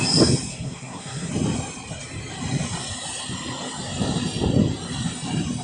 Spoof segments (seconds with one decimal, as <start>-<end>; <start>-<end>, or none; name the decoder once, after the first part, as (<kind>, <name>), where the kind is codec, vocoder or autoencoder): 0.5-1.3 (codec, SNAC)